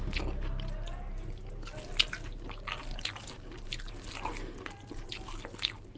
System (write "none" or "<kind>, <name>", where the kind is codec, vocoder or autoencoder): none